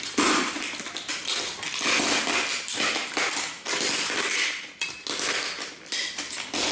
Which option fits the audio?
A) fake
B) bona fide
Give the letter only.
B